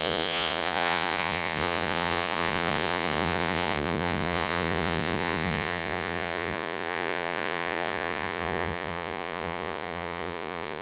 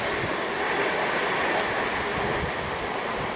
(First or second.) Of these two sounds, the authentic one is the second